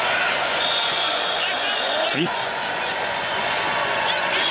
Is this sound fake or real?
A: fake